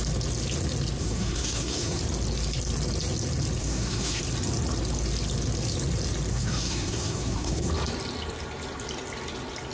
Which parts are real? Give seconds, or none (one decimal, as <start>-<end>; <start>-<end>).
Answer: 0.0-1.0; 2.0-3.6; 4.2-6.3; 7.7-9.7